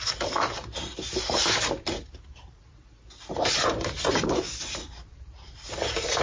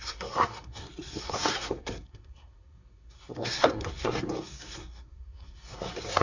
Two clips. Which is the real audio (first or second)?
first